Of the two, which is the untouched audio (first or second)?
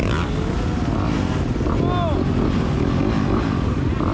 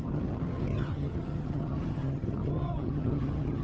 first